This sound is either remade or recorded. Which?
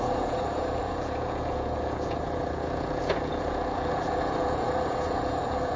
remade